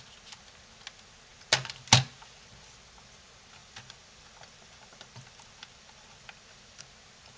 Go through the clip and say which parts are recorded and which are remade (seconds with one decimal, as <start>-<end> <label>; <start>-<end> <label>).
0.0-3.6 recorded; 3.6-6.8 remade; 6.8-7.4 recorded